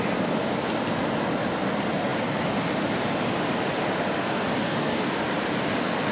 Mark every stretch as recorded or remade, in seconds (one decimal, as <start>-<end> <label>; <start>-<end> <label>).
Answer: 0.0-4.2 recorded; 4.2-5.2 remade; 5.2-6.1 recorded